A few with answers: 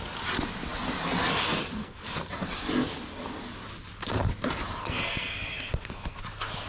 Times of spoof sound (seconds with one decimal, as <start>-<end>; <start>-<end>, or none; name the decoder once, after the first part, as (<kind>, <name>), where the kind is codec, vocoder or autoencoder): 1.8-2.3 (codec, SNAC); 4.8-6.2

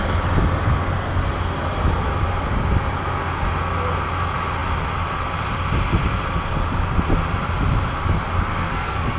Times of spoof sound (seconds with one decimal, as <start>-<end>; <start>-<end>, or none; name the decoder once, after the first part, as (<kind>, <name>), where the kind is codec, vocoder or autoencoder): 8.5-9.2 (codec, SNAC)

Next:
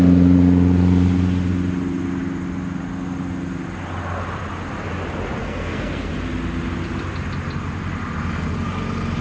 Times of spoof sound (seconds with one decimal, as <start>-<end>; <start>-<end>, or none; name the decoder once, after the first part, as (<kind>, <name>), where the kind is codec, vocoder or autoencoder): 5.4-6.1 (codec, SNAC)

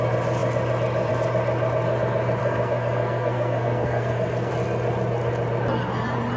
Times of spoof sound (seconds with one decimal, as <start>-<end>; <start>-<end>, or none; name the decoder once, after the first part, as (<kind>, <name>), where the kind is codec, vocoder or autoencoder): 2.4-4.5 (codec, SNAC)

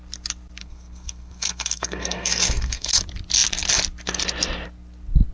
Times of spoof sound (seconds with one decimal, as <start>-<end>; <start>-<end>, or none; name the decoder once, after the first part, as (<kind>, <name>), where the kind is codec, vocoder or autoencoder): 0.6-3.0 (codec, SNAC)

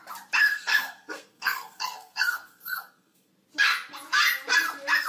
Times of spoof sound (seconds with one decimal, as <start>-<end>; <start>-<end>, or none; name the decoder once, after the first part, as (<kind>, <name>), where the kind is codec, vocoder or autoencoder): 0.4-3.3 (codec, SNAC)

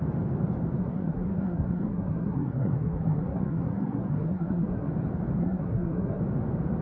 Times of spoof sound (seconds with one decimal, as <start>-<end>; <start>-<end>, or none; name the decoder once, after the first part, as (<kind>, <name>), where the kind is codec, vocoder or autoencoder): 0.8-4.9 (codec, SNAC); 5.4-6.2